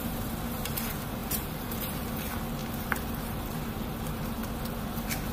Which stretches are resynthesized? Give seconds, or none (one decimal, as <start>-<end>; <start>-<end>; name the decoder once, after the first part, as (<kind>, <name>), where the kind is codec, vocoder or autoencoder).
0.0-2.6 (vocoder, BigVGAN v2); 3.2-4.4